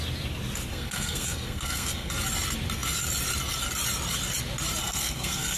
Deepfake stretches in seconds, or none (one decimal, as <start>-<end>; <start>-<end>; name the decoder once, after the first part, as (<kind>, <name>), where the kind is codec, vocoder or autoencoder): 0.7-2.1 (codec, SNAC); 4.8-5.6